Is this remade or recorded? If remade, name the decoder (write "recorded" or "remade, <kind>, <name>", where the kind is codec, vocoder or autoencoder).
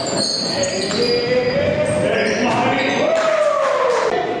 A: recorded